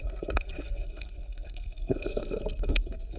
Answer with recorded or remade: remade